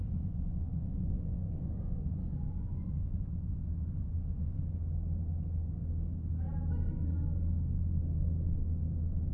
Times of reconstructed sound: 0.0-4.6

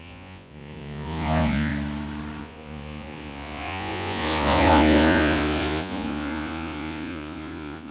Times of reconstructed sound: 0.0-1.7; 2.4-7.9

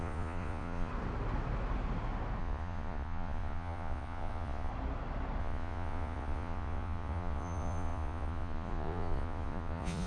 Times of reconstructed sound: 0.0-0.9; 2.4-4.7; 5.4-10.1

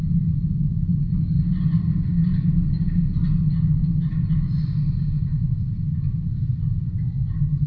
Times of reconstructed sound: none

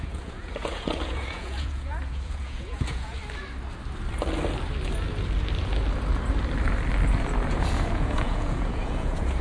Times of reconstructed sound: 0.0-3.2; 7.5-9.4

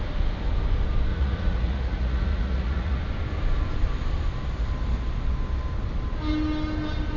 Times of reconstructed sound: 1.1-3.0

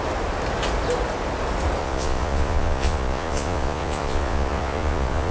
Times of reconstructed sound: 1.8-5.3